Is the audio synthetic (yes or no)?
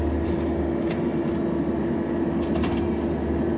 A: no